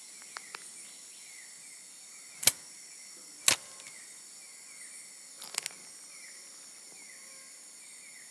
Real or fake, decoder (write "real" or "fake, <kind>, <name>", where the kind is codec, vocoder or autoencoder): real